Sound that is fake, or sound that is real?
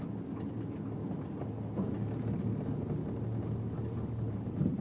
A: real